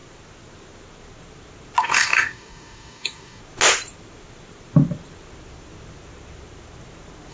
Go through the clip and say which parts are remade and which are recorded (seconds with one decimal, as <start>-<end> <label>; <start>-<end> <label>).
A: 0.0-1.8 recorded; 1.8-3.4 remade; 3.4-7.3 recorded